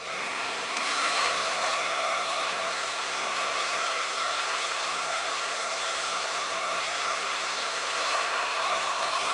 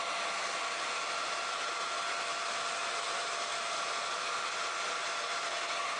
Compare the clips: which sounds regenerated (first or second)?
first